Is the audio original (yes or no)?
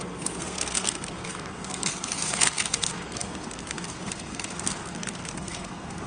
no